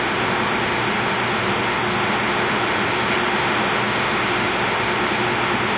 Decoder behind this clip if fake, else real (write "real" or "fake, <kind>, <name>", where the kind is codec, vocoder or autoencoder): fake, autoencoder, DAC-VAE